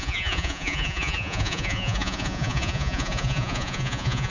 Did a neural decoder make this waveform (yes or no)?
yes